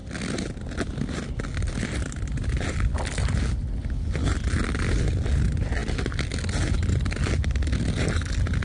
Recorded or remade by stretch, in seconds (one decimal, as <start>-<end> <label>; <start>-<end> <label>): 0.0-8.6 recorded